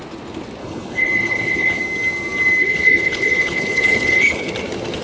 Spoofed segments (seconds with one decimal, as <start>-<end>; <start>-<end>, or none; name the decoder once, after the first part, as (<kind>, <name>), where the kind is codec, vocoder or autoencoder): 0.6-1.8 (codec, HILCodec); 2.6-4.5